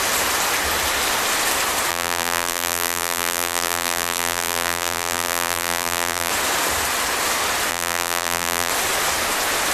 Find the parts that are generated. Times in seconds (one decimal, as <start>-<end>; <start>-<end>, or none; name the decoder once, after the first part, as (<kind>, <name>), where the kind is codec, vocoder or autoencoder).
1.9-6.3 (vocoder, BigVGAN v2); 7.7-8.7